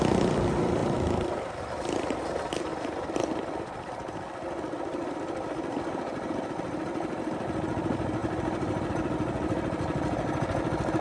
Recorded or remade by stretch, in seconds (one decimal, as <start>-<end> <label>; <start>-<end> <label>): 0.0-0.8 recorded; 0.8-1.6 remade; 1.6-8.2 recorded; 8.2-8.9 remade; 8.9-11.0 recorded